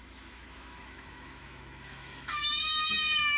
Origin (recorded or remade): remade